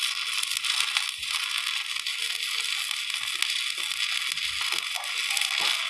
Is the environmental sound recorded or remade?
recorded